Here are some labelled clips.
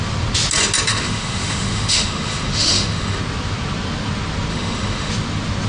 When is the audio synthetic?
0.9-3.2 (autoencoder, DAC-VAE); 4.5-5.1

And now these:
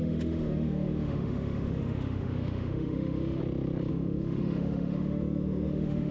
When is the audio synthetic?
0.0-3.4 (autoencoder, DAC-VAE); 3.9-6.1

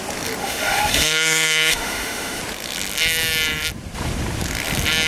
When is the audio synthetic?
0.4-2.4 (autoencoder, DAC-VAE)

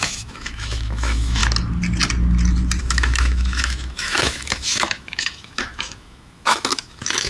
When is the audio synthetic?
0.0-1.4 (autoencoder, DAC-VAE); 2.8-7.3

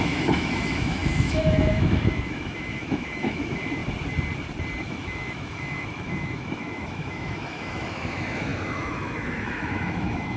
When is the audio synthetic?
0.0-3.8 (autoencoder, DAC-VAE); 4.8-10.4